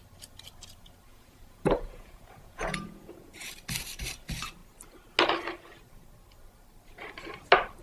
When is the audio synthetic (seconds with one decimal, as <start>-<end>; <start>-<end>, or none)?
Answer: 1.1-3.5